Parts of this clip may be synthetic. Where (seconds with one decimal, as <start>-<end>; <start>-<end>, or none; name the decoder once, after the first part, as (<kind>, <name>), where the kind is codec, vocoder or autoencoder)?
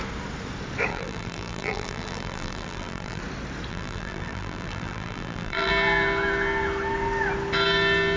0.9-3.2 (vocoder, BigVGAN v2); 3.7-5.7